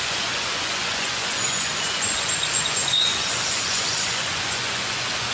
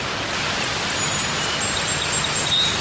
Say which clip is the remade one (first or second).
first